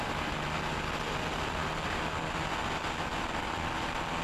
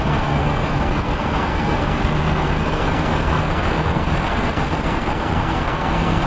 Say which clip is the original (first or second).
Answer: first